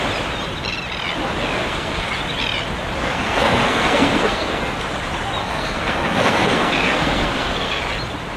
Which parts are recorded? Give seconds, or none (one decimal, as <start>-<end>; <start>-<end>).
0.0-1.6; 2.1-3.0; 4.8-5.4; 7.8-8.4